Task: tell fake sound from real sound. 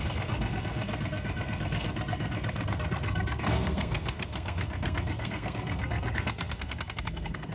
fake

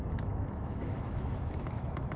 fake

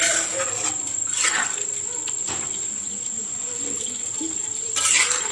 fake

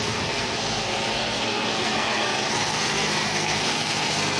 fake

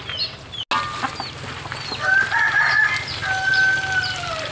real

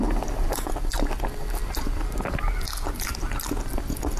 real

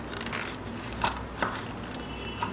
real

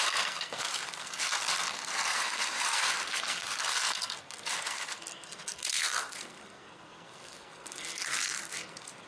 fake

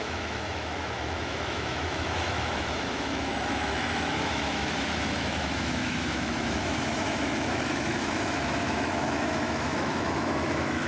fake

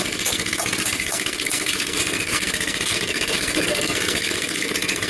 fake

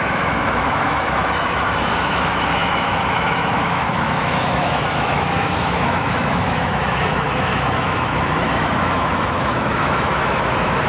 fake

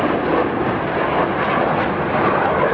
real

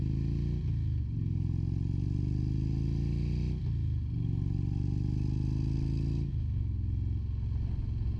real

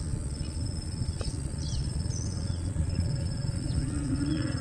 fake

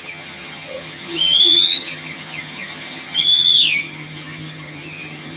fake